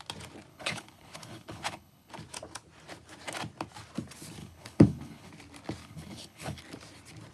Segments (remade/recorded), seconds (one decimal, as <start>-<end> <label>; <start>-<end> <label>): 0.0-0.5 recorded; 0.5-2.1 remade; 2.1-4.4 recorded; 4.4-5.3 remade; 5.3-5.8 recorded; 5.8-6.6 remade; 6.6-7.3 recorded